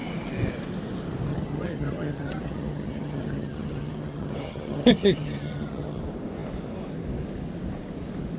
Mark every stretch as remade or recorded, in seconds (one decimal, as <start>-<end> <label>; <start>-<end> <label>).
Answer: 0.0-1.3 recorded; 1.3-6.0 remade; 6.0-8.4 recorded